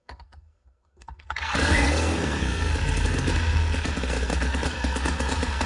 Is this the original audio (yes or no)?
no